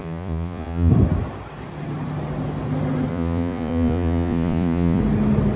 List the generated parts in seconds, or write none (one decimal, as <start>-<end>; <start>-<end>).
0.0-0.9; 3.1-5.0